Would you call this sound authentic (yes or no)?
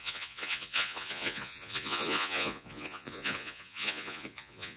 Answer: no